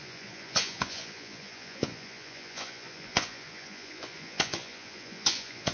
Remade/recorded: remade